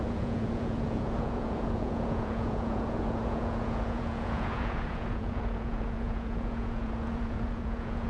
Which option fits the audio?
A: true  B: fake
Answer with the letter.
B